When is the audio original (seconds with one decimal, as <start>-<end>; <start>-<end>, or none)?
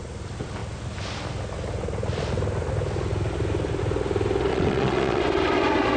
0.0-4.5; 5.2-6.0